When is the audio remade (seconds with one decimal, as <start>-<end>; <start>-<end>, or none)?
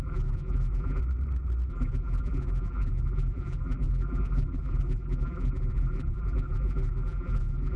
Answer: 0.0-1.0; 1.7-7.8